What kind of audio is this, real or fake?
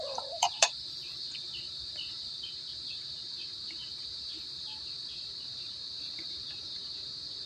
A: fake